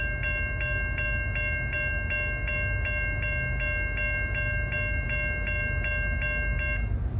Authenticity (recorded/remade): recorded